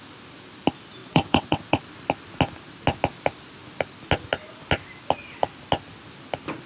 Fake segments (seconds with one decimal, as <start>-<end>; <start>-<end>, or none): 1.0-1.8